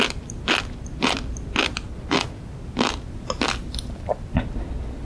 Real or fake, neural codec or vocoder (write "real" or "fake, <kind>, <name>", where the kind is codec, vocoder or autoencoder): real